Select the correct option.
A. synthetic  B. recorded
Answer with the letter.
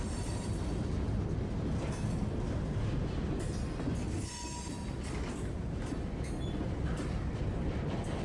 B